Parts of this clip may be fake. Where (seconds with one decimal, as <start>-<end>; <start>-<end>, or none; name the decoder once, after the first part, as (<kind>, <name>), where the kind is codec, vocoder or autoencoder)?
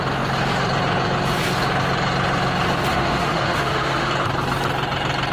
2.9-4.1 (autoencoder, DAC-VAE)